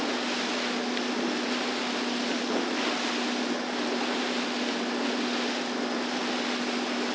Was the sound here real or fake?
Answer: real